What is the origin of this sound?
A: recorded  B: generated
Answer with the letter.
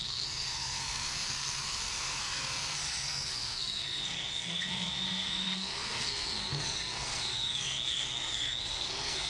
B